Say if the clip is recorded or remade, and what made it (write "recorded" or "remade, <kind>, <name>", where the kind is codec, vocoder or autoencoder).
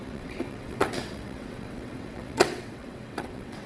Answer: remade, vocoder, WaveNeXt